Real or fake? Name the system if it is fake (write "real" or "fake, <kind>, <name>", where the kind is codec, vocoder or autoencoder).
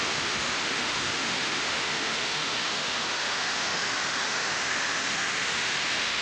fake, autoencoder, DAC-VAE